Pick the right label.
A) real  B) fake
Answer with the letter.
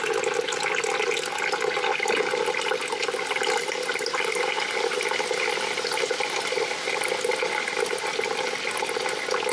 A